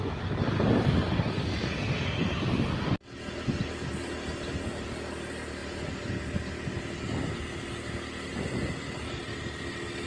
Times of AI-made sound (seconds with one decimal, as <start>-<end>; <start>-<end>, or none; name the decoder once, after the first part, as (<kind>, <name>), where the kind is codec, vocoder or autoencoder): none